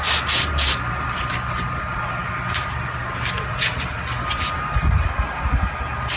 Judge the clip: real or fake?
real